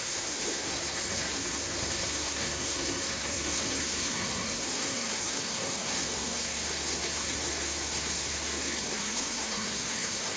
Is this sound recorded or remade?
remade